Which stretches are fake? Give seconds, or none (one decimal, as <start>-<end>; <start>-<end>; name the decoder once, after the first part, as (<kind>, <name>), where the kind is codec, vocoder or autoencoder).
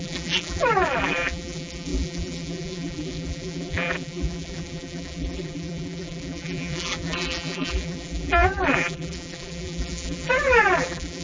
0.0-11.2 (vocoder, BigVGAN v2)